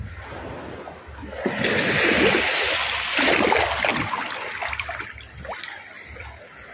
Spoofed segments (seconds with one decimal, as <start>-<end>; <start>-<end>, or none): none